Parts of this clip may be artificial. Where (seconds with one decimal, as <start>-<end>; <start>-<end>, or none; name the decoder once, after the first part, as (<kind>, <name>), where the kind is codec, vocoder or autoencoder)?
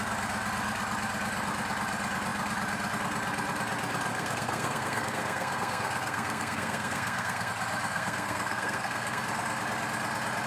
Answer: 4.1-7.5 (codec, SNAC); 7.9-9.2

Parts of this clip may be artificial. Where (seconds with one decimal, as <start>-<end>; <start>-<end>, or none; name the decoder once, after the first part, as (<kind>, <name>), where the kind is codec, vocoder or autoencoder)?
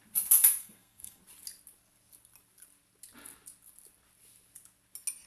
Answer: 0.6-1.2 (codec, SNAC)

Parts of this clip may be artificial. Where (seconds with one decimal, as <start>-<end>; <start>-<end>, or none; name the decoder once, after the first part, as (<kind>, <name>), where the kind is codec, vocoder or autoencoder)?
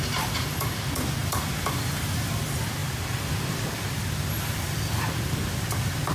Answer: 1.2-2.0 (vocoder, BigVGAN v2)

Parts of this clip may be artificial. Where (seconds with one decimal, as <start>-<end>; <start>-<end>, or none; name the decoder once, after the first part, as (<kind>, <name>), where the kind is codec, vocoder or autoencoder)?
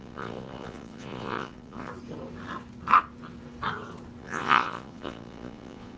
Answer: 0.0-1.9 (vocoder, Vocos); 4.2-6.0